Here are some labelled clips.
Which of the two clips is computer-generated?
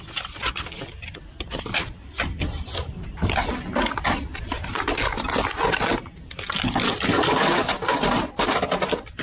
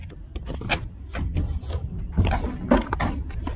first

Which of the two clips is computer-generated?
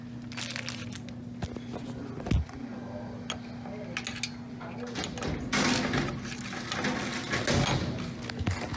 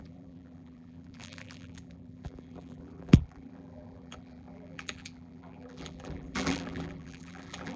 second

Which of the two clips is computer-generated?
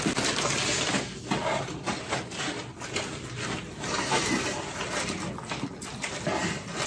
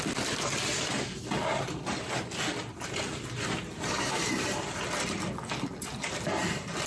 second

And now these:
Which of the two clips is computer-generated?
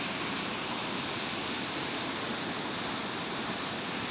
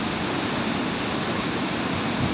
first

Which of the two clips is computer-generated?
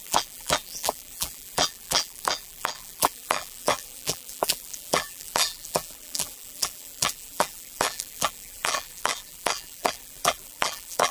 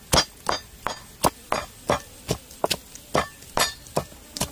first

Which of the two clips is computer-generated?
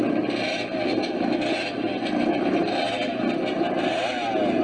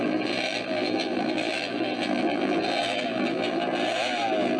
second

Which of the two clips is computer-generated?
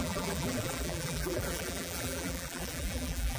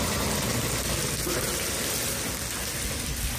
first